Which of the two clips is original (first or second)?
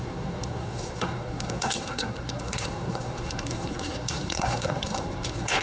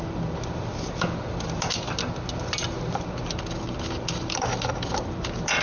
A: second